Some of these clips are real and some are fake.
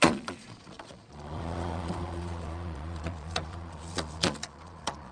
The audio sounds fake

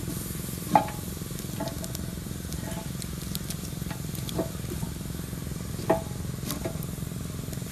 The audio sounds real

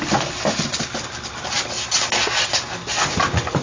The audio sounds real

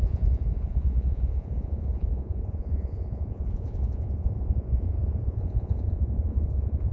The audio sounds fake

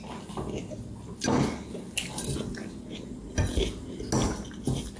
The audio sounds real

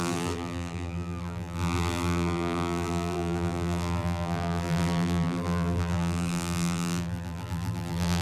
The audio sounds fake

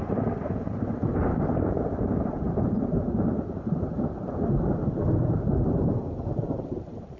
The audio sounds fake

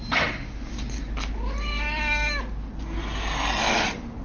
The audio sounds real